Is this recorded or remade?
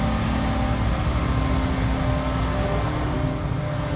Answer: recorded